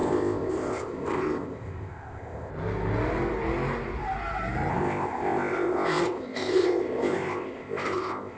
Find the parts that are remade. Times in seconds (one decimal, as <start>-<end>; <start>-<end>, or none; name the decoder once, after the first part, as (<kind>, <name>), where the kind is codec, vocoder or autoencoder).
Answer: 0.0-2.5 (codec, ZipCodec); 4.7-8.4